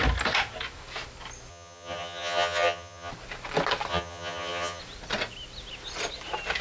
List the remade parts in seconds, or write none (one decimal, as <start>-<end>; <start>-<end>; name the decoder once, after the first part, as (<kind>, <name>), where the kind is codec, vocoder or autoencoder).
1.5-3.1 (vocoder, HiFi-GAN); 3.9-4.8